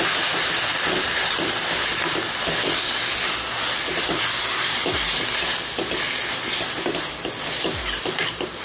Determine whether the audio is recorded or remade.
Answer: recorded